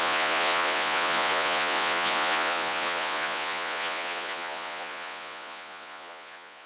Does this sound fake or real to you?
fake